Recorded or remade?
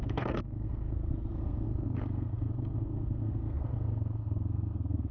remade